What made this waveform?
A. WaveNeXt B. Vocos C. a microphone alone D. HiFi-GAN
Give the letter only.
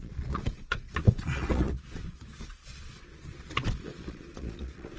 B